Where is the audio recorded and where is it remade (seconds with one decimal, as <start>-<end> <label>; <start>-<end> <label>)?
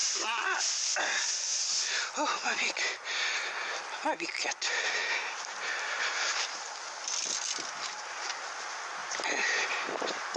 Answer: 0.0-0.8 remade; 0.8-5.0 recorded; 5.0-6.7 remade; 6.7-9.0 recorded; 9.0-10.4 remade